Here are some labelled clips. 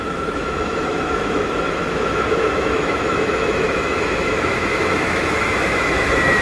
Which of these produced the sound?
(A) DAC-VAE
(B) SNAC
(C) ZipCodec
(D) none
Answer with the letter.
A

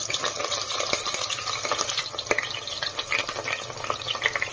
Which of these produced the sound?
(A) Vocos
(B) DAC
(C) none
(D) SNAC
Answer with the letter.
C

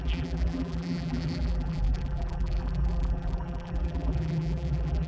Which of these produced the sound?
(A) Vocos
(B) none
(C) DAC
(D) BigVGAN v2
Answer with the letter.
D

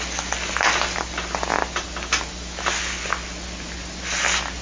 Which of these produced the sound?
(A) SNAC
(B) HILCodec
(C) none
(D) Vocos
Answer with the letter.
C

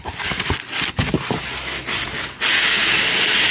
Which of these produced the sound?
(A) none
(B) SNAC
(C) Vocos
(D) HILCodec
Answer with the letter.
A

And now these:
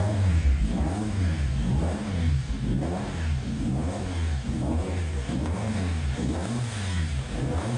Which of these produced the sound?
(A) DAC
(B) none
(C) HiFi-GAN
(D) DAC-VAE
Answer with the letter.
A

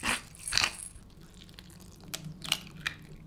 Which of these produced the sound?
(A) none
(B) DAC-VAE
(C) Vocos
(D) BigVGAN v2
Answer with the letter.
A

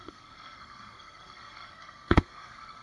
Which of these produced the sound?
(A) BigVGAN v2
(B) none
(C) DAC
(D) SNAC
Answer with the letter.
D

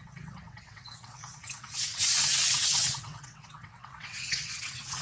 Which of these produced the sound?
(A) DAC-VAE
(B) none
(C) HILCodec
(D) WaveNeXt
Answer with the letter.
D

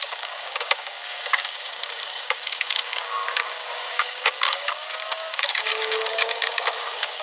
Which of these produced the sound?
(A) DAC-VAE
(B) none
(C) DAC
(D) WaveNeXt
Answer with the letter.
C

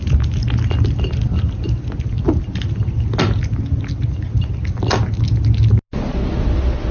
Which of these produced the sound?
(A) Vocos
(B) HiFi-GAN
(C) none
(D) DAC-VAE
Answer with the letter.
C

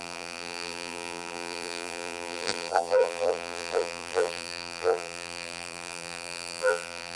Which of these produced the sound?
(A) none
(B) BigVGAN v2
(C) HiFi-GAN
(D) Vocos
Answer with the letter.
B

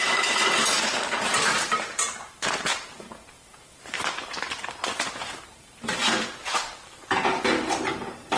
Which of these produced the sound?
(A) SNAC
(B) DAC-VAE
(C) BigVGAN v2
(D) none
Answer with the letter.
C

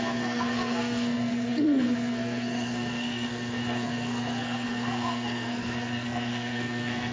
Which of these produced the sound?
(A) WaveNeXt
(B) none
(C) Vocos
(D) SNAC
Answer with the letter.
D